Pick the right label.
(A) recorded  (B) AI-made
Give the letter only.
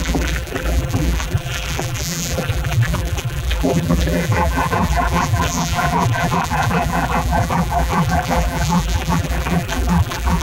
B